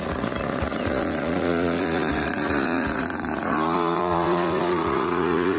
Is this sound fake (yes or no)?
yes